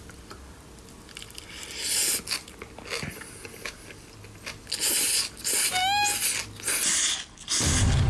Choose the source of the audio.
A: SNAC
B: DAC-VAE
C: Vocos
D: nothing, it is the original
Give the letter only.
D